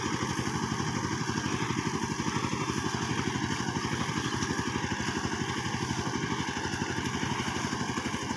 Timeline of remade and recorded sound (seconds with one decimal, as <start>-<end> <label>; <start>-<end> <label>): 0.0-8.4 recorded